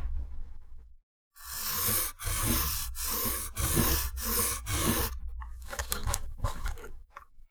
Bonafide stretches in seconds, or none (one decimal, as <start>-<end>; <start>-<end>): 0.9-5.4